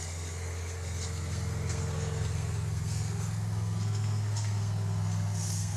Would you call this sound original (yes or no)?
no